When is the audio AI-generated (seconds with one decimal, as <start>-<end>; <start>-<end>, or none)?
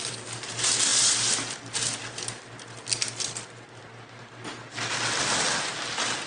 none